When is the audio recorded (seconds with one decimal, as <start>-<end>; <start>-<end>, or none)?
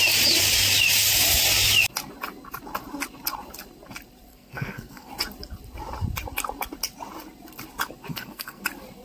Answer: 0.0-4.3; 5.1-8.1; 8.6-9.0